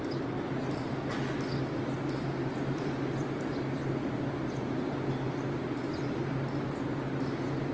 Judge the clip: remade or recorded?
recorded